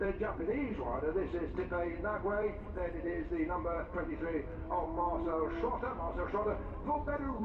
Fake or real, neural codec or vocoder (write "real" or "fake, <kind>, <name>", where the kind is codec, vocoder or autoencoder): fake, vocoder, BigVGAN v2